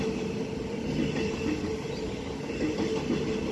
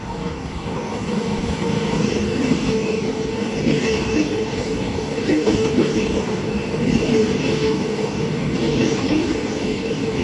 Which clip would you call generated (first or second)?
second